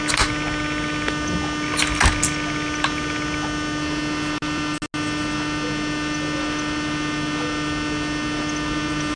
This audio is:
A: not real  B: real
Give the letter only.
B